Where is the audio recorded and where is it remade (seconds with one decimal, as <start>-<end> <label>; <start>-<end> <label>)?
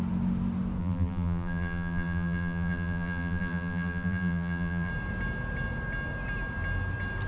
0.0-0.8 recorded; 0.8-4.9 remade; 4.9-7.3 recorded